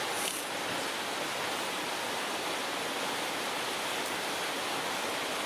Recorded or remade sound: recorded